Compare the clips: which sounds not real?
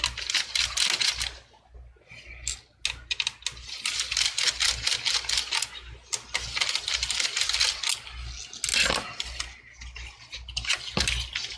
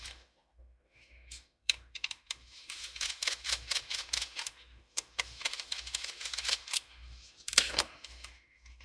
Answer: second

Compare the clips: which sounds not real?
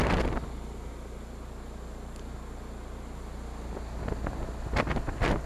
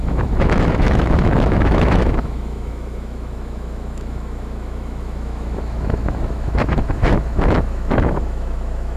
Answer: second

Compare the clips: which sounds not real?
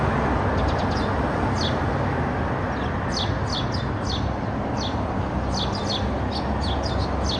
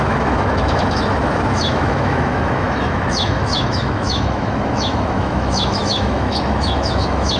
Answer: second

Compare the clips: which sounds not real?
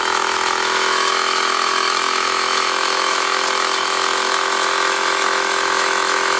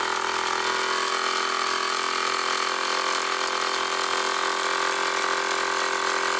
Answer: first